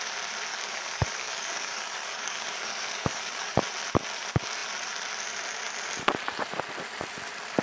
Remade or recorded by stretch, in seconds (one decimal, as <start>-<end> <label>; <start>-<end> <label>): 0.0-0.5 recorded; 0.5-3.6 remade; 3.6-7.6 recorded